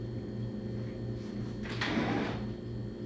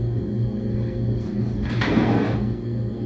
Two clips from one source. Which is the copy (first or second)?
second